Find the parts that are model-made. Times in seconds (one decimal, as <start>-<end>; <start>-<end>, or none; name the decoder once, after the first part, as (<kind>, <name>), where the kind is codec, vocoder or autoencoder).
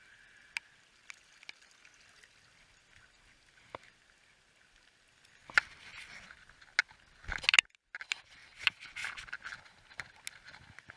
none